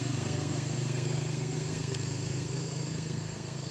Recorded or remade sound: remade